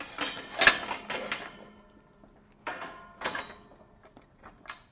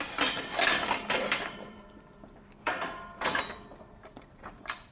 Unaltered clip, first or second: first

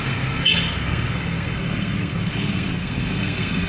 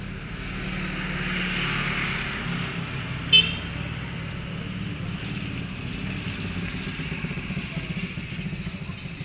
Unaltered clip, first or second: second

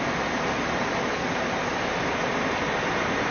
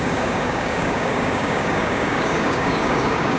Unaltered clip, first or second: first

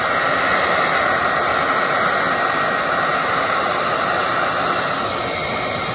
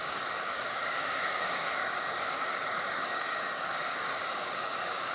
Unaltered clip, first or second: first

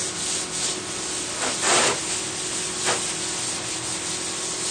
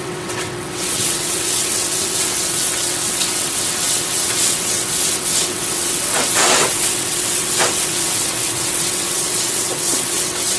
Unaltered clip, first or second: first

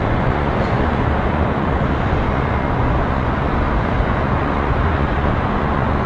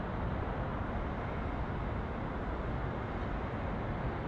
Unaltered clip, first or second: second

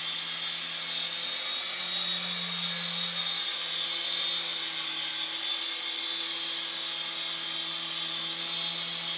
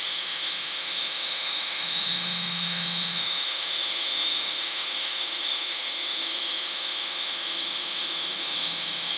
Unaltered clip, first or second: first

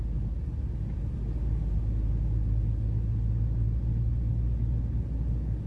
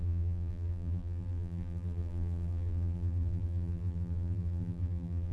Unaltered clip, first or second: first